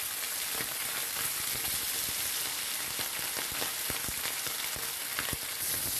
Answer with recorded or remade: recorded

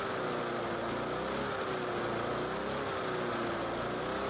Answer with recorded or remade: recorded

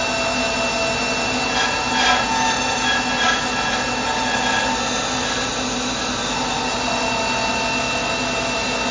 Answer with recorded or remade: recorded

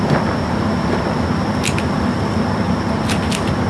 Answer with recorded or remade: recorded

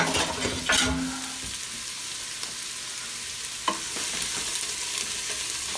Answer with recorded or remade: recorded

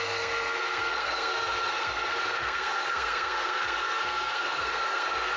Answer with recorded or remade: remade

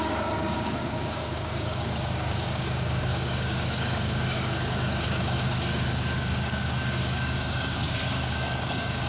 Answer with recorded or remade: remade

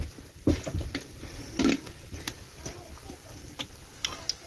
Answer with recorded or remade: recorded